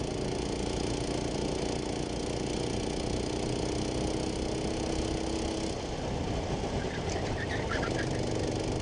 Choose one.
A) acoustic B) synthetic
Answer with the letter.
A